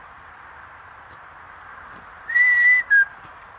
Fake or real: fake